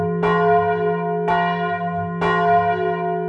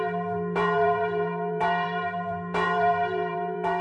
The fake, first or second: second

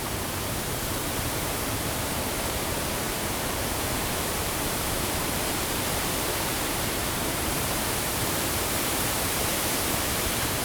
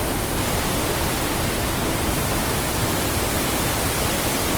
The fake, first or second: first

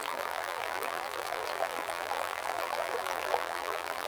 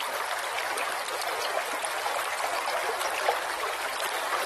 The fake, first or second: first